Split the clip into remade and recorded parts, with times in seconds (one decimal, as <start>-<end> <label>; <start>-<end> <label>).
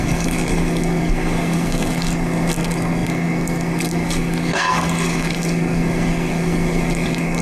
0.0-7.4 remade